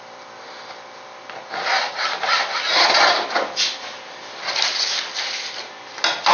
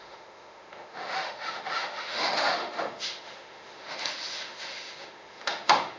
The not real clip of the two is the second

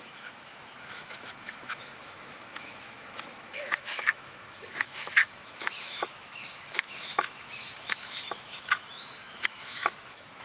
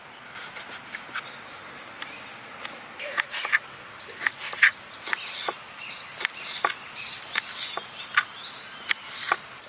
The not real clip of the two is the first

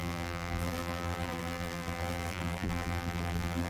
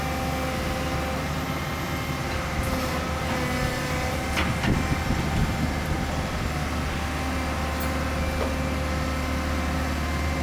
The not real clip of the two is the first